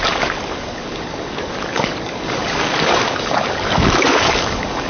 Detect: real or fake fake